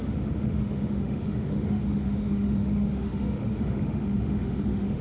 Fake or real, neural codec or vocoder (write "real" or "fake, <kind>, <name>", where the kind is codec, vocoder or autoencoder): fake, autoencoder, DAC-VAE